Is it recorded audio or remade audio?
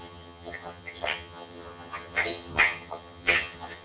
remade